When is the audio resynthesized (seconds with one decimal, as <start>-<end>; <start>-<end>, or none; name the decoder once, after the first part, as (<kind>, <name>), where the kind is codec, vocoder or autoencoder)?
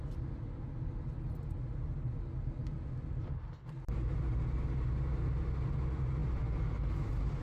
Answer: none